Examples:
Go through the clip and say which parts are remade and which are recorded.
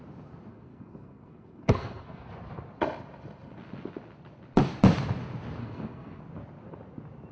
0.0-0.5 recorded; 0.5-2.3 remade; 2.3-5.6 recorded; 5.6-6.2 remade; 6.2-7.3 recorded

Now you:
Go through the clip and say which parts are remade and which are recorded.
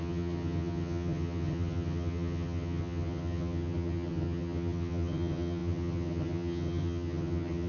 0.0-7.7 remade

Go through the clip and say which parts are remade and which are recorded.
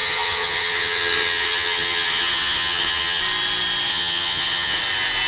0.0-3.2 remade; 3.2-3.9 recorded; 3.9-4.8 remade; 4.8-5.3 recorded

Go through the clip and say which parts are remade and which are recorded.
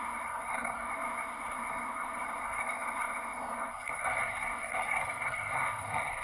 0.0-6.2 remade